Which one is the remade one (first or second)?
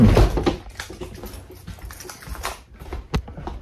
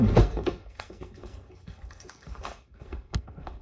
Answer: second